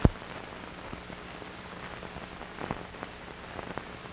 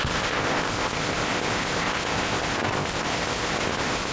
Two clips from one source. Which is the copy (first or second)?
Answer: second